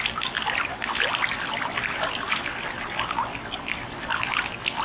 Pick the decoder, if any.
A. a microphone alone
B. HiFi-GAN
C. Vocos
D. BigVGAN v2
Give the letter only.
D